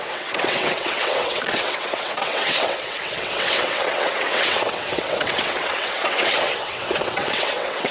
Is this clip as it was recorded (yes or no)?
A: no